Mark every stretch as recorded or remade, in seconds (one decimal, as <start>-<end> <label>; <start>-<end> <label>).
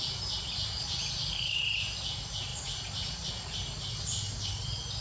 0.0-5.0 recorded